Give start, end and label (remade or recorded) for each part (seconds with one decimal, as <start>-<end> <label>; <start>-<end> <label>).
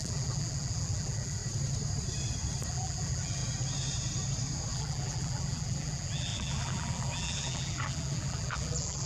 0.0-1.4 remade; 1.4-2.7 recorded; 2.7-3.4 remade; 3.4-4.7 recorded; 4.7-9.1 remade